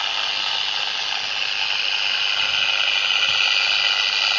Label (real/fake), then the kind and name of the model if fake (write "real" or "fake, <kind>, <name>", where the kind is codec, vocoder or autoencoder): real